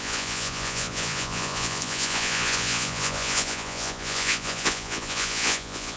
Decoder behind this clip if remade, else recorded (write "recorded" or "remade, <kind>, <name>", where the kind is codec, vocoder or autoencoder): remade, vocoder, Vocos